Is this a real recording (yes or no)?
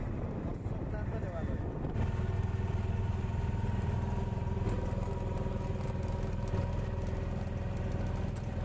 yes